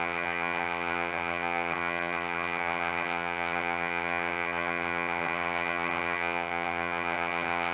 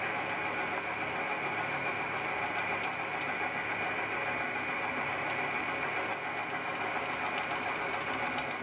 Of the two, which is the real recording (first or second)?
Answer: second